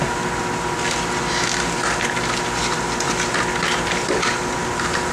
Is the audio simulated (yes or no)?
no